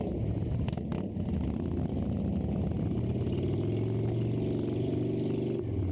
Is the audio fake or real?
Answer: real